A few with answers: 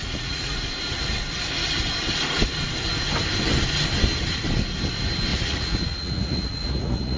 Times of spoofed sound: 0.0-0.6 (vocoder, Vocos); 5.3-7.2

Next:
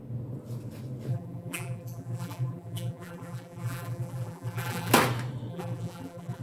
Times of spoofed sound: 1.1-4.9 (vocoder, BigVGAN v2); 5.5-6.4

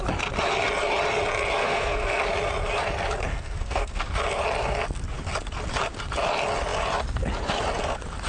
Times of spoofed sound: 1.6-2.2 (codec, SNAC); 3.3-4.1

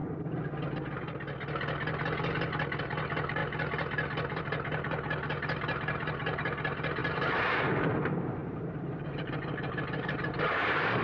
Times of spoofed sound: 2.8-11.0 (vocoder, BigVGAN v2)